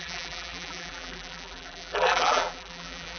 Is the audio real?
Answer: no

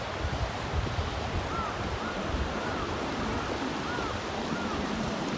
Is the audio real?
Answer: yes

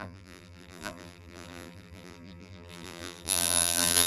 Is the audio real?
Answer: no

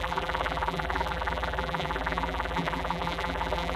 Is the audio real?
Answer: no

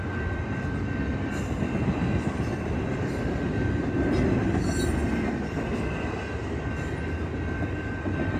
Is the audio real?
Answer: yes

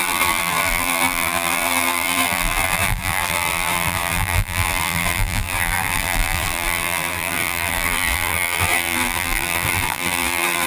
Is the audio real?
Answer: no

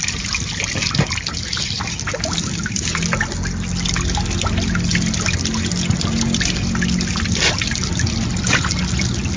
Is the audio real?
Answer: yes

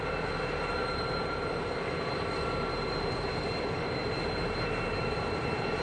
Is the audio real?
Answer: no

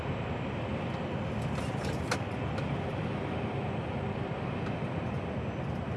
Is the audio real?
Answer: yes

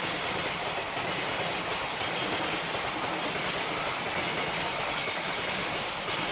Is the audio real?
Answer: no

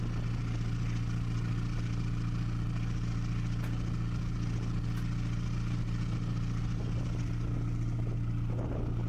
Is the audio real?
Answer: yes